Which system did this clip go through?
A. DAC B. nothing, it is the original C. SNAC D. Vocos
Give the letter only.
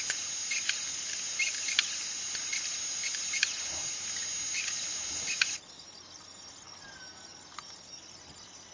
B